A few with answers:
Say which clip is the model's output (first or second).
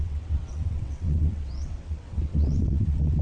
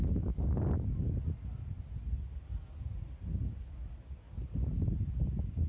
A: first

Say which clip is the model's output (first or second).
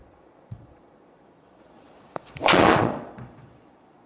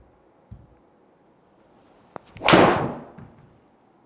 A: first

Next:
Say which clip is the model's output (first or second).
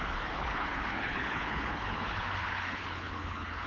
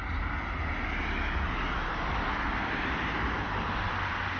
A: first